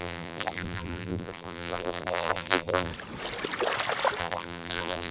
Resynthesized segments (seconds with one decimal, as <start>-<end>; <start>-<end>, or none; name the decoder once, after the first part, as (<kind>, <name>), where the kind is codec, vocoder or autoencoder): 0.0-2.9 (vocoder, BigVGAN v2); 4.2-5.1